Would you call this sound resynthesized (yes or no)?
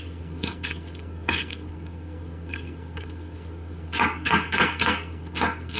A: yes